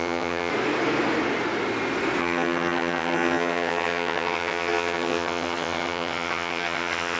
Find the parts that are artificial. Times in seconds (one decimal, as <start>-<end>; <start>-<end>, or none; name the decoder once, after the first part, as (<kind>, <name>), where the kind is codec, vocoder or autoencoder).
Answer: 0.0-0.5 (vocoder, HiFi-GAN); 2.2-7.2